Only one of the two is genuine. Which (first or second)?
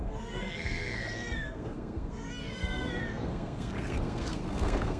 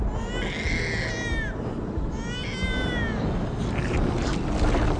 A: second